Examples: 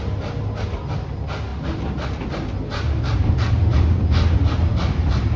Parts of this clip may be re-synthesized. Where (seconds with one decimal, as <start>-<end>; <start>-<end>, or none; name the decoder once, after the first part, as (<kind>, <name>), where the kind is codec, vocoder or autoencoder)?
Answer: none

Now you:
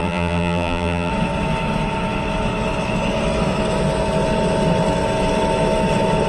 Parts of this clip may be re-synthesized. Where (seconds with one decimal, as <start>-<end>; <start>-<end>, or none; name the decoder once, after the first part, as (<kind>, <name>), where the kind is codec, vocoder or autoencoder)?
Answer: 0.0-1.1 (vocoder, BigVGAN v2)

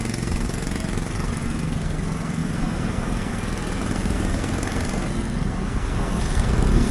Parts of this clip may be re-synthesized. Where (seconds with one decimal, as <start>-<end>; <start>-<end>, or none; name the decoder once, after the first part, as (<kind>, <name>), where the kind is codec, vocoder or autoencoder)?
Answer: 0.0-6.9 (codec, SNAC)

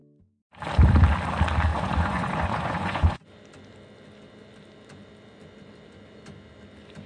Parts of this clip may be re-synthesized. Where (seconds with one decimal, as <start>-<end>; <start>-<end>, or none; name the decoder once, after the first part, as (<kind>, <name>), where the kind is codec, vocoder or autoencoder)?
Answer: 1.7-3.2 (vocoder, Vocos)